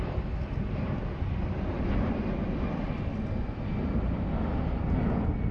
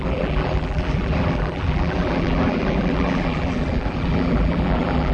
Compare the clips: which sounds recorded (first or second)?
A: first